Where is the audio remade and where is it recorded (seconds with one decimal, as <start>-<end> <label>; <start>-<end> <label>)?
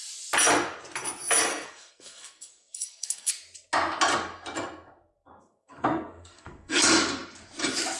0.0-1.5 recorded; 1.5-3.3 remade; 3.3-5.3 recorded; 5.3-6.8 remade; 6.8-8.0 recorded